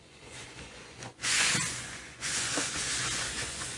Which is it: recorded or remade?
remade